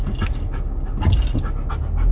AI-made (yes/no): no